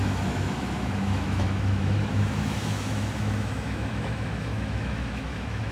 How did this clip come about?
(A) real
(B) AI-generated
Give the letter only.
B